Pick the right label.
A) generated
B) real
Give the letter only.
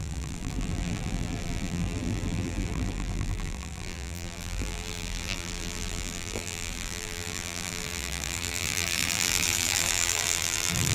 A